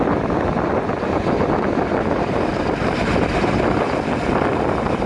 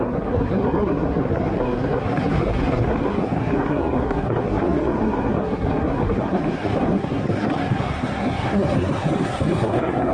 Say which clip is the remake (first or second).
second